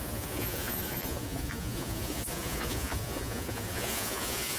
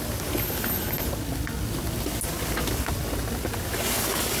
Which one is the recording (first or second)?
second